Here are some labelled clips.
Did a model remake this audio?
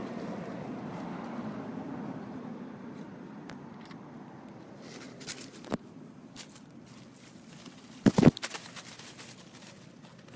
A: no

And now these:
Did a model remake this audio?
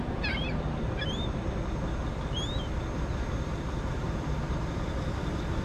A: no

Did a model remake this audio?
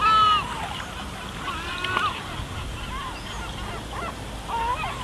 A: no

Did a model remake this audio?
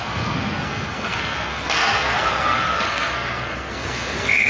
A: yes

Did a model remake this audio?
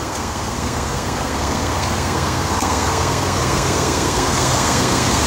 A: yes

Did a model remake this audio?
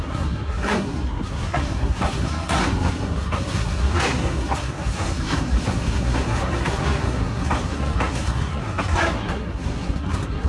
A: yes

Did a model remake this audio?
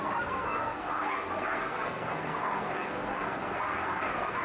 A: yes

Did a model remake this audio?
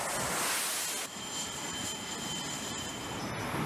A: no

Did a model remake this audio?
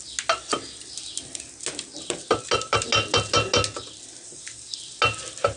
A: no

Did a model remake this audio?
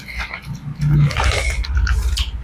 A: no